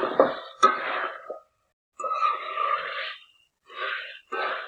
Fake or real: real